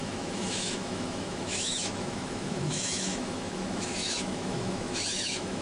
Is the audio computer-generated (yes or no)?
yes